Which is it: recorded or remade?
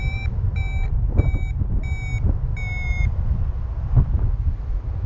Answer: recorded